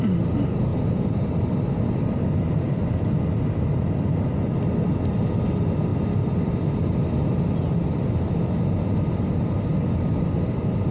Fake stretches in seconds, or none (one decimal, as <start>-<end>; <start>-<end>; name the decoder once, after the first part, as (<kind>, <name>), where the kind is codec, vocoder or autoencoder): none